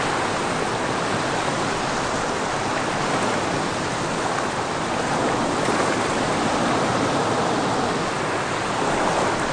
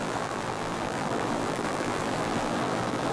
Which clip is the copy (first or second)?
second